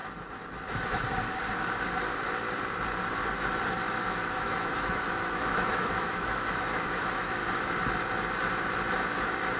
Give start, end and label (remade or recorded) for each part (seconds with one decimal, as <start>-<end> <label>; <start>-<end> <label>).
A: 0.0-3.9 recorded; 3.9-7.4 remade; 7.4-9.6 recorded